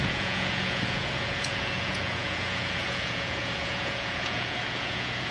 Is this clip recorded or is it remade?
remade